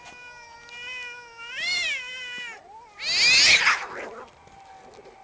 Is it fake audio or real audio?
real